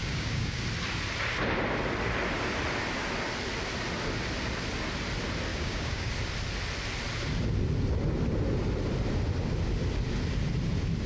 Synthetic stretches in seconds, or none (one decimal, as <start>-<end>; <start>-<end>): 0.0-0.6; 5.5-6.1